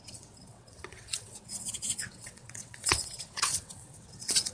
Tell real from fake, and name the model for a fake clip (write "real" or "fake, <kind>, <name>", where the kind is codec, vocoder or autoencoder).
fake, vocoder, WaveNeXt